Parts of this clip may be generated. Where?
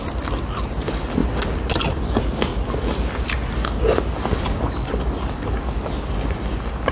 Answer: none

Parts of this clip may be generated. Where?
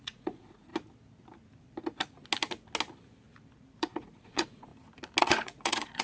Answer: 0.0-0.7 (vocoder, Vocos); 3.8-4.7; 5.2-6.0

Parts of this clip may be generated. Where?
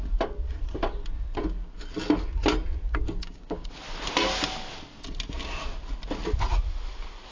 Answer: 3.2-3.7 (codec, DAC)